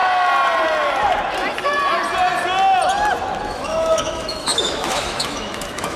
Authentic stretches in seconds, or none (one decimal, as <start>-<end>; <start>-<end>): 0.0-3.5